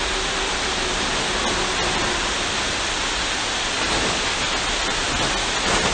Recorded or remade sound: recorded